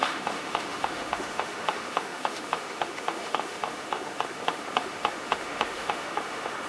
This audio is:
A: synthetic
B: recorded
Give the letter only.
A